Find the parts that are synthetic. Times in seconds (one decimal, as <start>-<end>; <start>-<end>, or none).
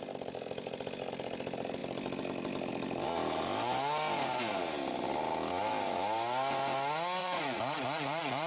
7.2-8.5